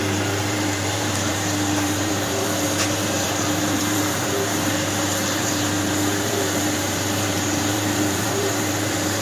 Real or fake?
fake